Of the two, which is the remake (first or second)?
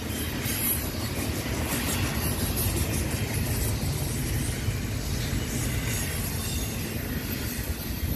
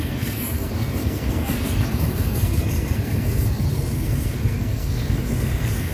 second